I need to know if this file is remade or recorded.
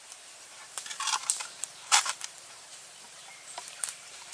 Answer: remade